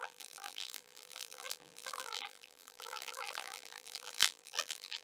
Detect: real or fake fake